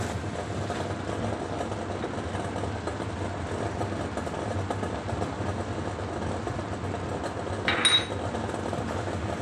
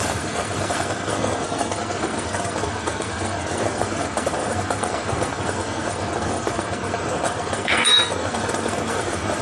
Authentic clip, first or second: first